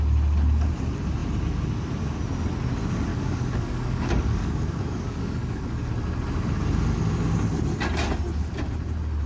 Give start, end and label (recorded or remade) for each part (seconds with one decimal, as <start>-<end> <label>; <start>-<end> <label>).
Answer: 0.0-3.1 recorded; 3.1-5.9 remade; 5.9-9.3 recorded